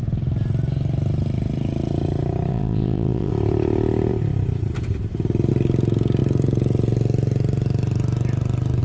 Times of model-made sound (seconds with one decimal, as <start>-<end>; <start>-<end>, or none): 2.5-3.3